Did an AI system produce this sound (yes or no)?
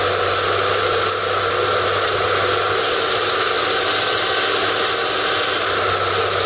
no